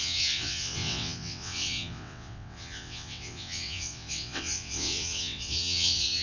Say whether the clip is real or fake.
fake